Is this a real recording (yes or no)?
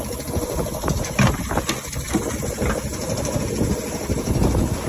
yes